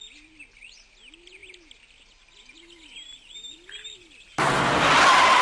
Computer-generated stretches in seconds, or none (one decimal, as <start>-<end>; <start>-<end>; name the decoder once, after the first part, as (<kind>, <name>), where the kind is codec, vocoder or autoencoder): none